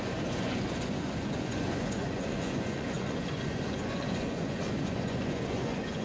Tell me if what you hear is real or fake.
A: fake